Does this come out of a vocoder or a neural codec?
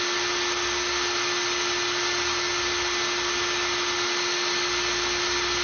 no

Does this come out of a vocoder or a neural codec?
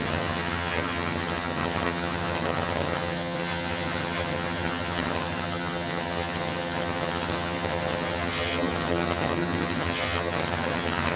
yes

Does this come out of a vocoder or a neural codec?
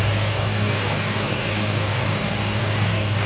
yes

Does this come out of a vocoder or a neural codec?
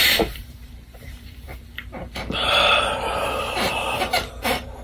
yes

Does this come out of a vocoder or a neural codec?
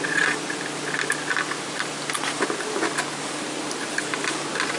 no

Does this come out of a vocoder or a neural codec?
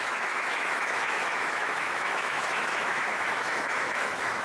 yes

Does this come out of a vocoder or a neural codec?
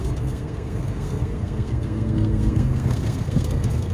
yes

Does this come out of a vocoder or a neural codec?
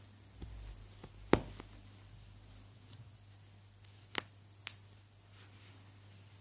no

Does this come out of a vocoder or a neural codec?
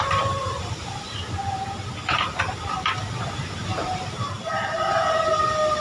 no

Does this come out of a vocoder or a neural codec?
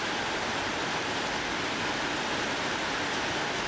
no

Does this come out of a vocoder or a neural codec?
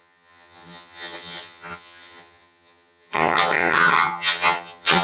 yes